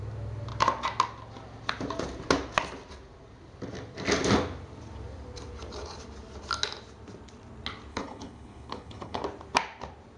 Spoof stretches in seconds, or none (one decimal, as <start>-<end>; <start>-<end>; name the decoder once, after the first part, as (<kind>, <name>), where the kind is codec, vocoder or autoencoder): 7.9-9.2 (codec, HILCodec)